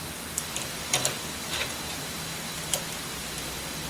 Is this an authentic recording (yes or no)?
no